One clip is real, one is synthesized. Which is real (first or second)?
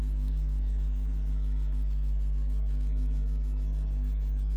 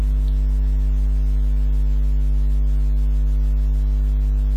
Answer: second